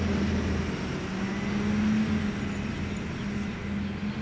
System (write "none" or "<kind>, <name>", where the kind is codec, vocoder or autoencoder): none